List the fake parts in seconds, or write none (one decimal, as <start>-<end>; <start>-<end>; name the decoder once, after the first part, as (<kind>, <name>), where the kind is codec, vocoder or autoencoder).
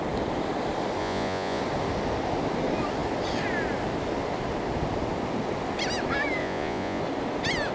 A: 1.0-1.6 (vocoder, Vocos); 6.4-7.0